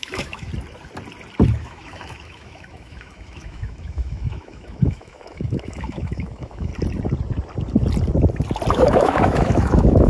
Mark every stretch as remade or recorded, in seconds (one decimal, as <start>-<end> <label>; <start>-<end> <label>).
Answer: 0.0-0.5 remade; 0.5-1.6 recorded; 1.6-6.7 remade; 6.7-8.7 recorded; 8.7-10.1 remade